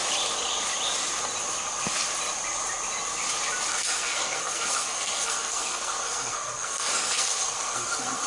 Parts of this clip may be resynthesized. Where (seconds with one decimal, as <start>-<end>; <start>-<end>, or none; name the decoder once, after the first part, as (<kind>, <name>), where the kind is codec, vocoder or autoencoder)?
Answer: 3.7-8.3 (codec, SNAC)